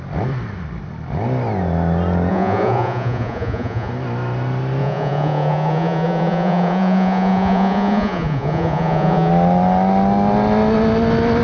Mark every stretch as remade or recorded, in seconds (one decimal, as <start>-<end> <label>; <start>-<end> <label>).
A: 0.0-2.3 recorded; 2.3-3.9 remade; 3.9-4.8 recorded; 4.8-9.3 remade; 9.3-11.4 recorded